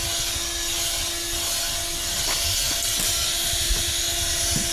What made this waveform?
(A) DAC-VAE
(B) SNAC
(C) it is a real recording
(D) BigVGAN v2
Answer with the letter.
C